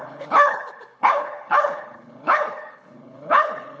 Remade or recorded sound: remade